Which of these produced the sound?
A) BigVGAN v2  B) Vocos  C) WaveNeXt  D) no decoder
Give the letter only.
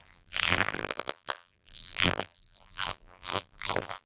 A